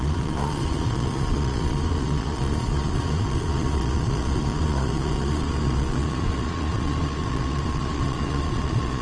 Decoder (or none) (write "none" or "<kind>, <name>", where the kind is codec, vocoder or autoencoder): vocoder, Vocos